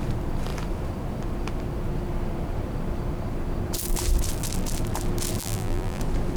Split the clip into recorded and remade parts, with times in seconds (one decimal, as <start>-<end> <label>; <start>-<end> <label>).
0.0-5.4 recorded; 5.4-6.0 remade; 6.0-6.4 recorded